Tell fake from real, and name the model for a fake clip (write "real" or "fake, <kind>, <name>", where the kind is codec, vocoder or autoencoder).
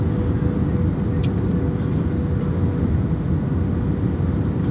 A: real